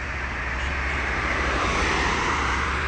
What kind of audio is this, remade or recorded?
remade